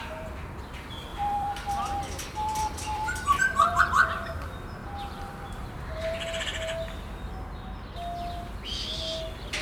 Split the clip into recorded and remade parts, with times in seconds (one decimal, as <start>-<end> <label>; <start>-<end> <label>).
0.0-1.1 recorded; 1.1-3.8 remade; 3.8-4.8 recorded; 4.8-6.1 remade; 6.1-9.6 recorded